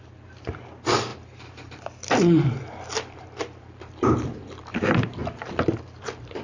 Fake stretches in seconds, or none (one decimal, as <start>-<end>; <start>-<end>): 1.1-4.9